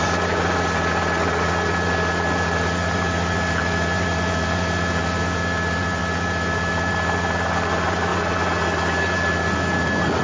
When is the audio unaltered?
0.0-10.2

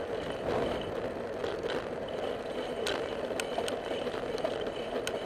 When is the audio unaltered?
0.0-5.3

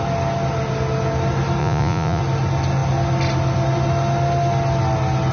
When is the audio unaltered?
0.0-1.6; 2.2-5.3

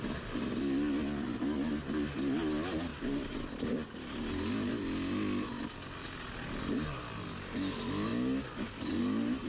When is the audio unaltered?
0.0-9.5

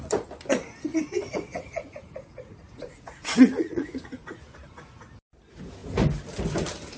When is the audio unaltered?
0.0-0.9; 4.9-7.0

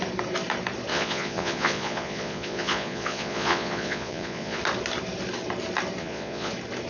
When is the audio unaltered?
0.0-0.9; 4.6-6.0; 6.5-6.9

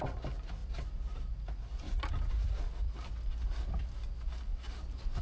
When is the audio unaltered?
0.0-5.2

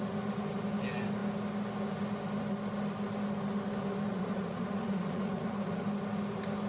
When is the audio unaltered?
0.0-4.1; 5.8-6.7